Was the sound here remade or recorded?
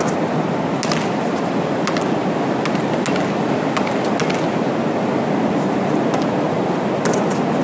recorded